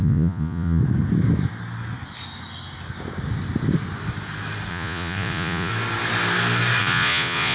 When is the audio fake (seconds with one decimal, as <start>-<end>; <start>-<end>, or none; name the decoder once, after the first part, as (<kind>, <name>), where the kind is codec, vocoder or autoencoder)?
0.0-0.8 (vocoder, Vocos); 4.7-5.7; 6.8-7.5